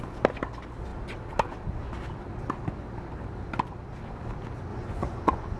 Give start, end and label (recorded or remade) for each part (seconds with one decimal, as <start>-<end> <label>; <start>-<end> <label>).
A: 0.0-4.7 recorded; 4.7-5.6 remade